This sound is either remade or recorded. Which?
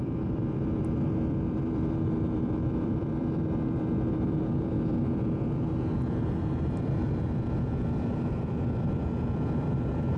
remade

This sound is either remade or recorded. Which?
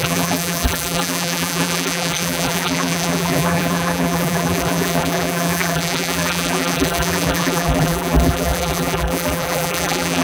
remade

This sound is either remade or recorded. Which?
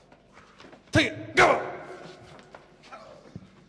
recorded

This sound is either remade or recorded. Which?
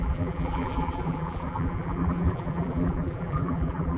remade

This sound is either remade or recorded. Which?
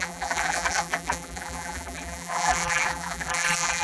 remade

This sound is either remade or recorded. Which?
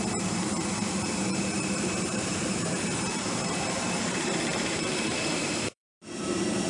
remade